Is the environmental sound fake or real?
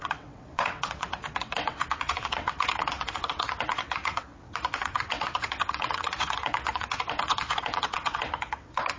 fake